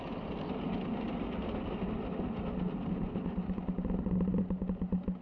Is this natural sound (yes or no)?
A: yes